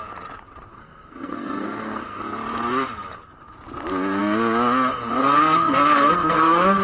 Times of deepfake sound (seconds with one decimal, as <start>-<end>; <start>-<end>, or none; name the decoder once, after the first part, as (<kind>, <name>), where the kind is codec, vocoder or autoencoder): 0.7-2.2 (codec, SNAC); 5.2-6.8